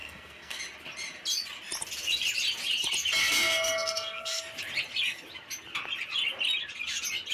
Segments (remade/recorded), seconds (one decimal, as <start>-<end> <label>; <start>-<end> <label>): 0.0-0.6 remade; 0.6-3.2 recorded; 3.2-4.4 remade; 4.4-7.3 recorded